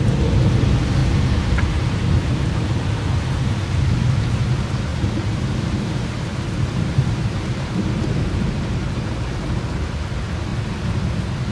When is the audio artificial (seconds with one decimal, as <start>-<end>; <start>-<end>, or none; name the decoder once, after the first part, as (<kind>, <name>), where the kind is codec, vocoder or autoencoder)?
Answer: 1.0-2.9 (vocoder, BigVGAN v2); 4.9-9.3